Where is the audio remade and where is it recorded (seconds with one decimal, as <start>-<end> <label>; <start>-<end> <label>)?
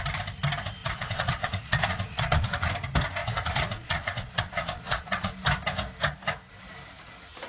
0.0-0.8 recorded; 0.8-2.7 remade; 2.7-3.2 recorded; 3.2-5.3 remade; 5.3-7.5 recorded